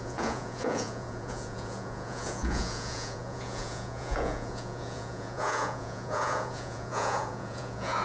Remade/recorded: remade